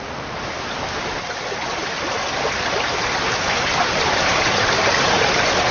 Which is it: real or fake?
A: real